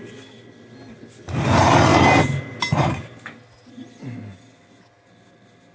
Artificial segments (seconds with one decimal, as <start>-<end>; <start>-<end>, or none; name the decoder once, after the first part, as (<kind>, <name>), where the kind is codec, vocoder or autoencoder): none